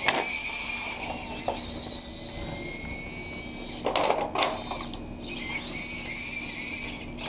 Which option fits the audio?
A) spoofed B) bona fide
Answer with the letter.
B